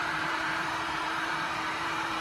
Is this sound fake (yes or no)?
yes